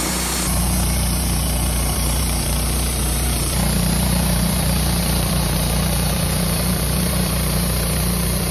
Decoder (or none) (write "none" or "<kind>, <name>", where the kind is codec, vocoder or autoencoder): vocoder, BigVGAN v2